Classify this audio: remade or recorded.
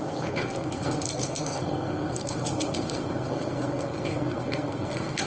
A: remade